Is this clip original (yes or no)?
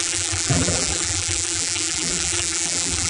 no